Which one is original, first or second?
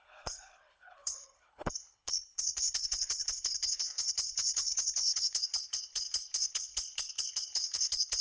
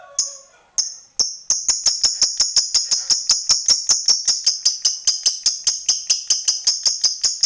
second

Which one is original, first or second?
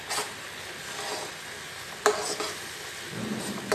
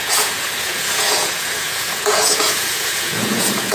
first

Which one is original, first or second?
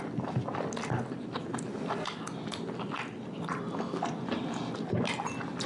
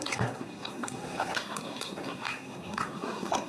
first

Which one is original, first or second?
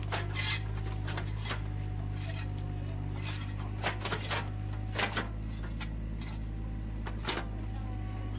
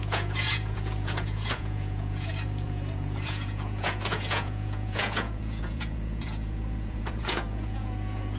first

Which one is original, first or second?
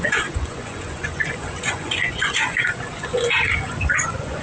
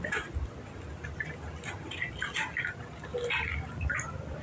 second